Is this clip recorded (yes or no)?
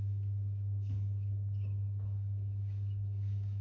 no